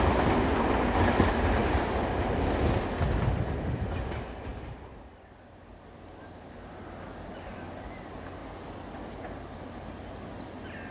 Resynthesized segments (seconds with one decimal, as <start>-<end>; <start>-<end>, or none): none